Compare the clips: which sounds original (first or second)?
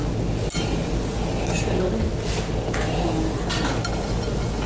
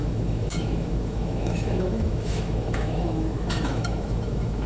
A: first